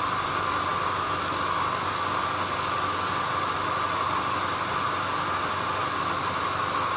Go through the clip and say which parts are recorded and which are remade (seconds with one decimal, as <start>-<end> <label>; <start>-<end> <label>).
0.0-7.0 recorded